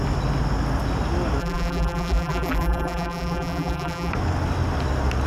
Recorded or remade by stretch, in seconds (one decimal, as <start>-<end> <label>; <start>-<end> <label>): 0.0-1.4 recorded; 1.4-4.1 remade; 4.1-5.3 recorded